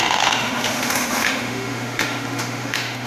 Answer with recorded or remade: remade